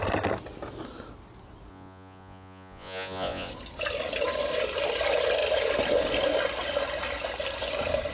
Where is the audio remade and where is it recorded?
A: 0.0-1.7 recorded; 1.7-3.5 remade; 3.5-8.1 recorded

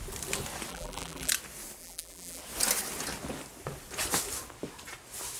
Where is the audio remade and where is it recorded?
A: 0.0-0.7 recorded; 0.7-1.3 remade; 1.3-1.8 recorded; 1.8-2.4 remade; 2.4-5.4 recorded

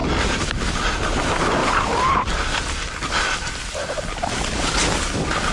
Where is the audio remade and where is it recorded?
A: 0.0-1.2 remade; 1.2-1.6 recorded; 1.6-4.8 remade; 4.8-5.5 recorded

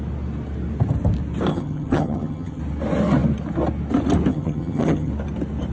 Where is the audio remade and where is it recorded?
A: 0.0-1.5 recorded; 1.5-2.6 remade; 2.6-4.3 recorded; 4.3-5.1 remade; 5.1-5.7 recorded

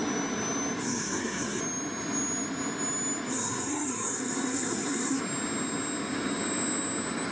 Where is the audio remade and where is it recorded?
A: 0.0-0.8 recorded; 0.8-1.6 remade; 1.6-3.3 recorded; 3.3-5.2 remade; 5.2-7.3 recorded

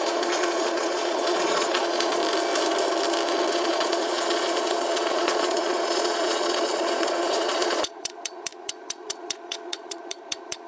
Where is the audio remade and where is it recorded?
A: 0.0-2.2 remade; 2.2-3.5 recorded; 3.5-10.7 remade

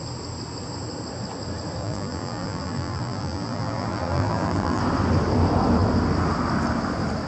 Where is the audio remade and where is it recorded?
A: 0.0-1.8 recorded; 1.8-4.8 remade; 4.8-7.3 recorded